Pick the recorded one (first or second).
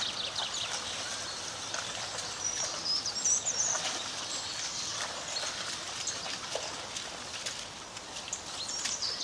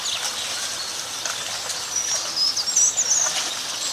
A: second